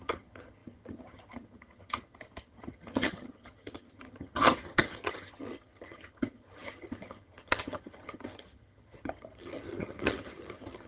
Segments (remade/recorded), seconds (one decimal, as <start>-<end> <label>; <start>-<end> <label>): 0.0-10.9 remade